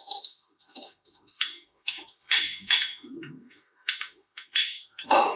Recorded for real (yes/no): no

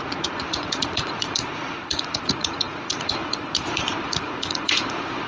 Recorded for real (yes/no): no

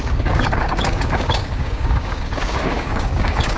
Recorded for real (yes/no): no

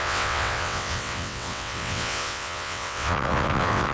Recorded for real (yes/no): no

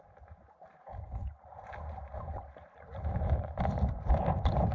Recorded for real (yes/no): no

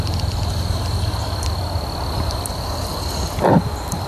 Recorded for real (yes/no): yes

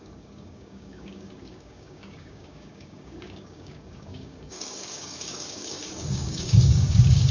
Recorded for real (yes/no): no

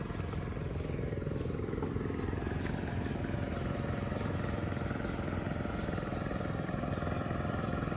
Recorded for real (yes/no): yes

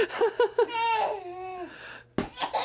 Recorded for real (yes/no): yes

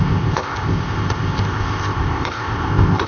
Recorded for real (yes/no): no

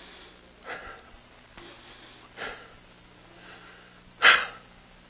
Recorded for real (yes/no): yes